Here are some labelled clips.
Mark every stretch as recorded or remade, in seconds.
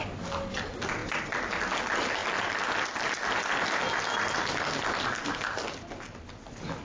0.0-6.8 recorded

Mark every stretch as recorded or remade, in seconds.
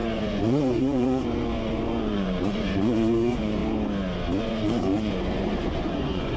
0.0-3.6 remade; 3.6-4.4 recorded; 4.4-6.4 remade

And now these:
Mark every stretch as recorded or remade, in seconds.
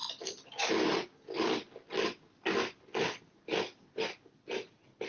0.0-5.1 recorded